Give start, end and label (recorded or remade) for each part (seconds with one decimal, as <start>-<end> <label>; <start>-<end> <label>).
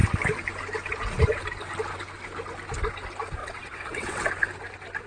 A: 0.0-3.4 recorded; 3.4-4.3 remade; 4.3-5.1 recorded